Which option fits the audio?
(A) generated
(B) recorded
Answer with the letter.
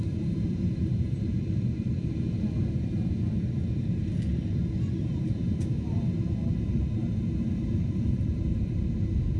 A